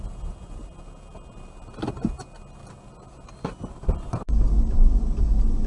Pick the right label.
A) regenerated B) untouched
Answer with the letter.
B